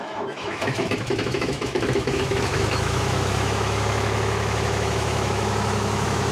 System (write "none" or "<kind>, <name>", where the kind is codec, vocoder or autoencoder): autoencoder, DAC-VAE